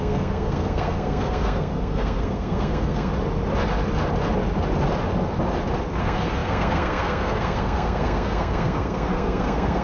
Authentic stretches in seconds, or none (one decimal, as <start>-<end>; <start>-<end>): 3.1-6.0

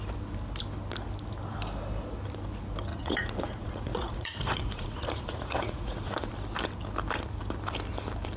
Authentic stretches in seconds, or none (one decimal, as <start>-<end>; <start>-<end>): 0.0-2.9; 6.3-8.4